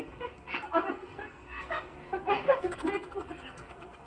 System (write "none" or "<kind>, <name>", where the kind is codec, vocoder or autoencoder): codec, SNAC